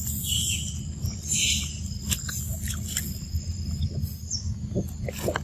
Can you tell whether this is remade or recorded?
recorded